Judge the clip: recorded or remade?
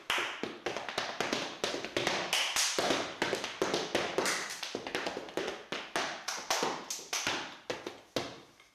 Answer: recorded